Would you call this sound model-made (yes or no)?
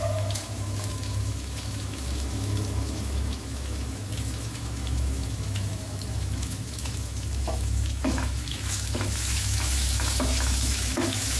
yes